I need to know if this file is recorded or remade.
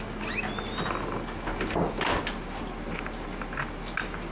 recorded